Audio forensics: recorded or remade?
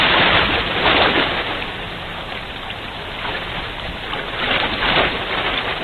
remade